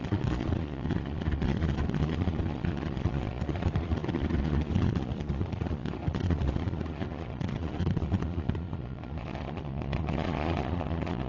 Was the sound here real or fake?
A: fake